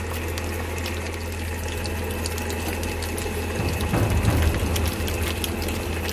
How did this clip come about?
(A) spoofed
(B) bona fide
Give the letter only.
B